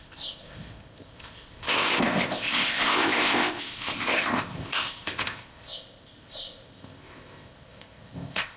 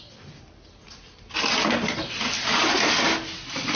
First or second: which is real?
second